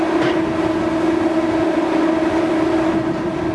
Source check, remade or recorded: recorded